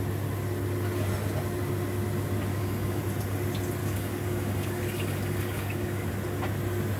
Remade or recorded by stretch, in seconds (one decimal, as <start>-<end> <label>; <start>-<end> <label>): 0.0-2.5 recorded; 2.5-3.0 remade; 3.0-3.8 recorded; 3.8-6.1 remade; 6.1-7.0 recorded